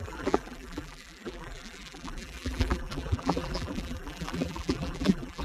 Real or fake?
fake